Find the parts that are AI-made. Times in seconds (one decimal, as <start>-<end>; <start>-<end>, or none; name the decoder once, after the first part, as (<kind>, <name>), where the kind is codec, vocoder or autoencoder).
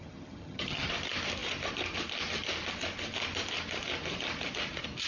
0.0-0.9 (vocoder, HiFi-GAN)